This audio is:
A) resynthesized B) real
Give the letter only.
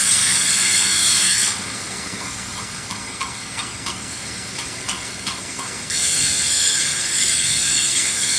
A